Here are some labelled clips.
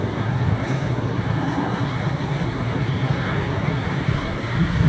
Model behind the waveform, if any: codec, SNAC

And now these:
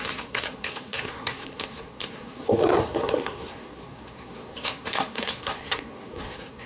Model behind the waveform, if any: codec, SNAC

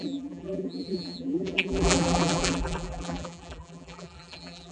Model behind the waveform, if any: vocoder, BigVGAN v2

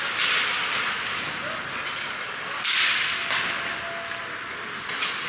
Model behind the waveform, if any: none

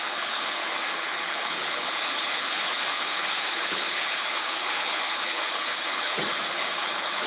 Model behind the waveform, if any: codec, HILCodec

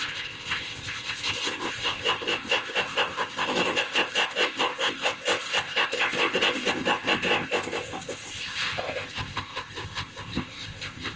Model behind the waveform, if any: codec, ZipCodec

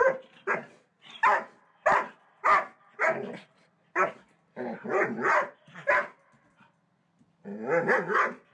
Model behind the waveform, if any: none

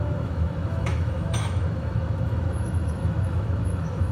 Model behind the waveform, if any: autoencoder, DAC-VAE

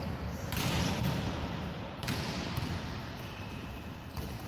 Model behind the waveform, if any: vocoder, BigVGAN v2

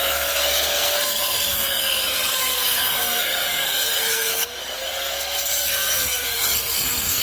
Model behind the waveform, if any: codec, SNAC